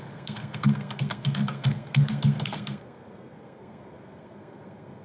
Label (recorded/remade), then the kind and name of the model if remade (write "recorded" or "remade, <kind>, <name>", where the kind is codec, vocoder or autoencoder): remade, codec, SNAC